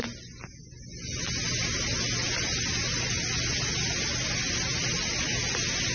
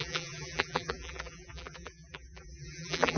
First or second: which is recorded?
first